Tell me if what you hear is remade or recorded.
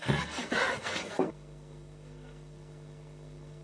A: remade